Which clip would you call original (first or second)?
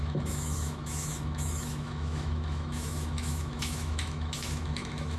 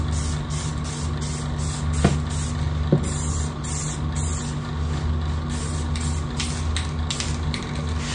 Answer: second